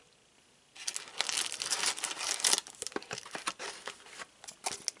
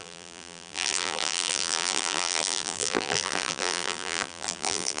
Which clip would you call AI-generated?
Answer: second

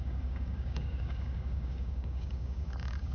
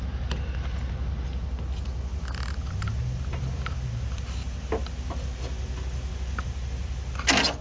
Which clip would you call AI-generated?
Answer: first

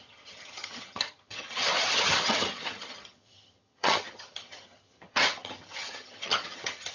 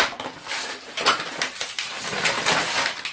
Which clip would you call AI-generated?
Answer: first